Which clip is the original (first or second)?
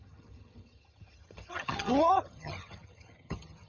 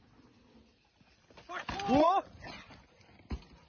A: second